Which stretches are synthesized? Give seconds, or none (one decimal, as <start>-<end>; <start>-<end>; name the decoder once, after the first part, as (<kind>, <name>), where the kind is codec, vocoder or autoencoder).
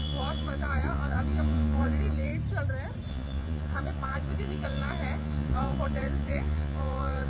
0.0-2.3 (vocoder, Vocos); 3.1-7.3